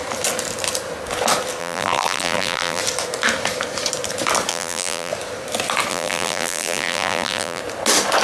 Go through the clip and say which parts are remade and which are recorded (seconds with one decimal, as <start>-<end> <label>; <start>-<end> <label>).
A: 0.0-1.6 recorded; 1.6-2.8 remade; 2.8-4.5 recorded; 4.5-5.1 remade; 5.1-5.9 recorded; 5.9-7.6 remade; 7.6-8.2 recorded